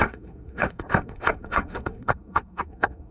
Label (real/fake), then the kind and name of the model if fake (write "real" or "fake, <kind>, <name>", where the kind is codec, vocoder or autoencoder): fake, codec, SNAC